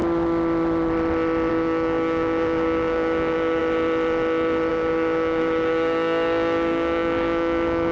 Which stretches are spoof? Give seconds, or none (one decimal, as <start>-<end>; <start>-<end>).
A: 1.5-3.6; 4.7-7.9